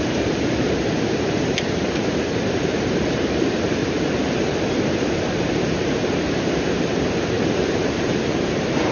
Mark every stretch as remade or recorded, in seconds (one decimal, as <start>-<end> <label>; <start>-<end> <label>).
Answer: 0.0-3.8 remade; 3.8-4.6 recorded; 4.6-8.9 remade